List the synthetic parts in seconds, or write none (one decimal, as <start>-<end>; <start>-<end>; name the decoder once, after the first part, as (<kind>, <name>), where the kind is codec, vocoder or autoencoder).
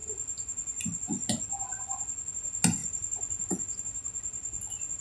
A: none